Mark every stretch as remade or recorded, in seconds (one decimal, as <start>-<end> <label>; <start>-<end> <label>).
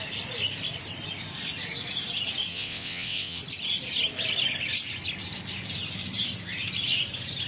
0.0-2.5 recorded; 2.5-3.4 remade; 3.4-7.5 recorded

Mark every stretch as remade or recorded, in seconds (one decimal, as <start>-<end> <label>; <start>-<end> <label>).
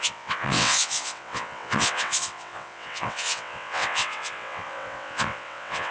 0.0-5.9 remade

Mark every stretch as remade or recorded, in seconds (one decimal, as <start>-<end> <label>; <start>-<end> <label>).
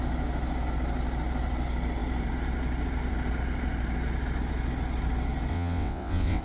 0.0-5.5 recorded; 5.5-6.4 remade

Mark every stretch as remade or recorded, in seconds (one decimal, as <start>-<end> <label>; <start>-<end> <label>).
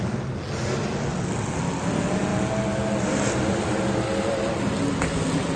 0.0-5.6 recorded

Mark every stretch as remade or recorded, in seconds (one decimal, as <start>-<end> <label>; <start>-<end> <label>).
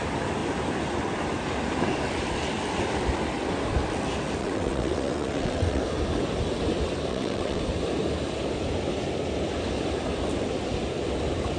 0.0-4.4 recorded; 4.4-5.8 remade; 5.8-7.1 recorded; 7.1-7.6 remade; 7.6-11.6 recorded